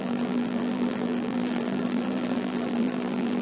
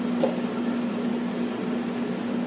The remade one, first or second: first